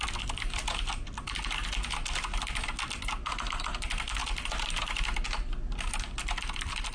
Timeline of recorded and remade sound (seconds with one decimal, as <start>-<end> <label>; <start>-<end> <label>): 0.0-6.9 recorded